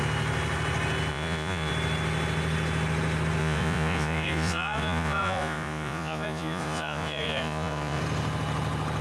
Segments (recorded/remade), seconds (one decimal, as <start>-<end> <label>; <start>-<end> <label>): 0.0-1.1 recorded; 1.1-1.7 remade; 1.7-3.4 recorded; 3.4-8.0 remade; 8.0-9.0 recorded